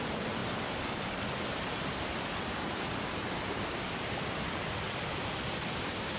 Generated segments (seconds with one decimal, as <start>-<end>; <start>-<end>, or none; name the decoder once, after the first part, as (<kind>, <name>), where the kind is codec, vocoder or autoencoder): 0.0-6.2 (vocoder, BigVGAN v2)